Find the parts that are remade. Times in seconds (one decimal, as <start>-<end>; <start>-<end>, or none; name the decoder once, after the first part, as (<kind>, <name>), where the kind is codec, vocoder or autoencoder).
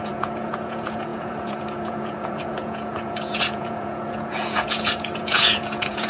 0.0-6.1 (vocoder, Vocos)